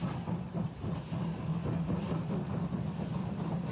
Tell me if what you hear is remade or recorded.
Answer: recorded